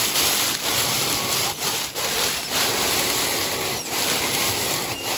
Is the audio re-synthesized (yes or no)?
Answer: no